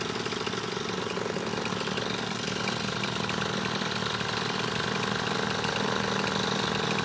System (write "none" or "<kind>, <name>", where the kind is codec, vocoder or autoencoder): none